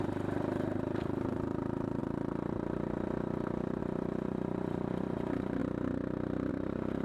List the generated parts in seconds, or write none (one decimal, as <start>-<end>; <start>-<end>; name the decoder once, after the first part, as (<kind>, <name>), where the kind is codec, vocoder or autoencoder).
0.0-2.0 (vocoder, BigVGAN v2); 3.8-5.6; 6.5-7.0